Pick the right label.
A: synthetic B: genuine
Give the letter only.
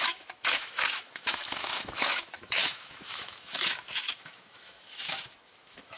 A